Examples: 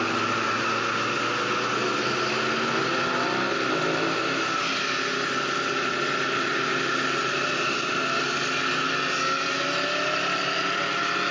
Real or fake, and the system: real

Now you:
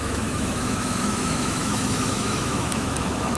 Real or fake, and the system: fake, autoencoder, DAC-VAE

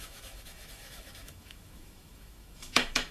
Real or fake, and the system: fake, autoencoder, DAC-VAE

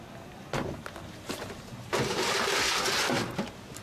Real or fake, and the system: real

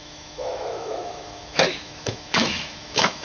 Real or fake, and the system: fake, autoencoder, DAC-VAE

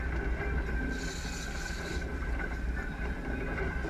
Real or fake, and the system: real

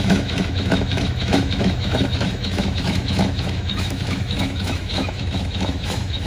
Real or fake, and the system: fake, autoencoder, DAC-VAE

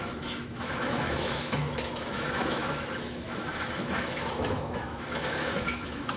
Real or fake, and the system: fake, autoencoder, DAC-VAE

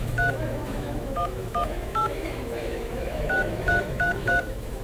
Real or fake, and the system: fake, autoencoder, DAC-VAE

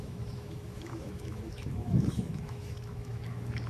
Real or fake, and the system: fake, autoencoder, DAC-VAE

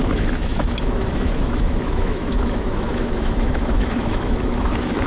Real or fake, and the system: fake, autoencoder, DAC-VAE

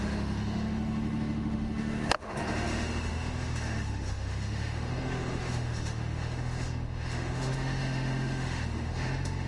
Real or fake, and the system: fake, autoencoder, DAC-VAE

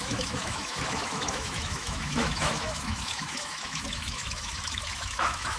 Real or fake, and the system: fake, autoencoder, DAC-VAE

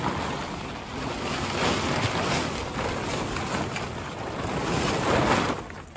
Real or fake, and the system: real